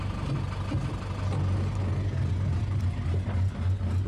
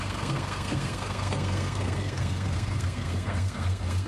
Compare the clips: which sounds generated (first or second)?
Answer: second